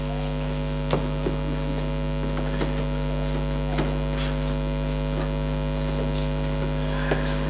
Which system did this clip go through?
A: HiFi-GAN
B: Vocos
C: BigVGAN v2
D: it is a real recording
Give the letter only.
D